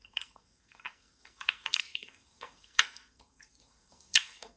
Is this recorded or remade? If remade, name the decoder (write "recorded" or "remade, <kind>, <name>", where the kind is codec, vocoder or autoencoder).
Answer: remade, codec, SNAC